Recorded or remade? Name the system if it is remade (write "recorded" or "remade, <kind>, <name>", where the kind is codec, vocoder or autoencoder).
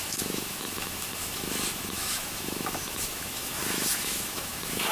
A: remade, autoencoder, DAC-VAE